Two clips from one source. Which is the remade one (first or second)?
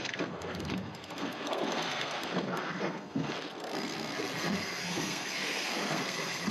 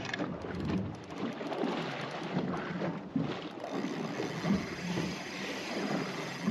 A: first